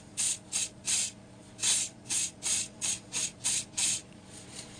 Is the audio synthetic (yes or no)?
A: yes